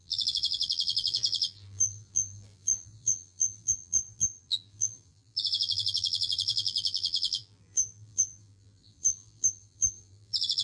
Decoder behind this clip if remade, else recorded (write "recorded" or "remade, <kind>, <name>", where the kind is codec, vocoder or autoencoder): remade, vocoder, BigVGAN v2